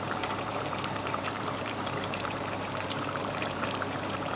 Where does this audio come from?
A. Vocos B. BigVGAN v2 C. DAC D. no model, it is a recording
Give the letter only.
B